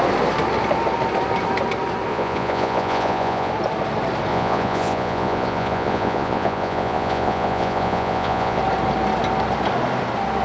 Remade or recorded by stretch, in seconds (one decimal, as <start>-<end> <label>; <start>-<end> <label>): 0.0-2.1 recorded; 2.1-3.5 remade; 3.5-4.3 recorded; 4.3-8.6 remade; 8.6-10.4 recorded